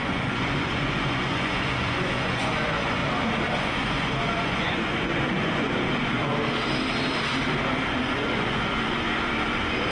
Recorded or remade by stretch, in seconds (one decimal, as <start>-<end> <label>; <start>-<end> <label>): 0.0-3.0 remade; 3.0-3.6 recorded; 3.6-6.3 remade; 6.3-8.0 recorded; 8.0-9.9 remade